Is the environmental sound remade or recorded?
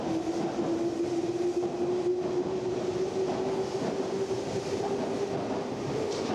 recorded